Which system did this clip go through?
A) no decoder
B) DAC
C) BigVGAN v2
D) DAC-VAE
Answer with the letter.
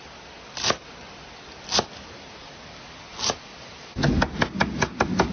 A